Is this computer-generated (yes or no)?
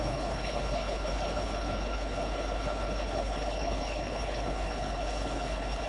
yes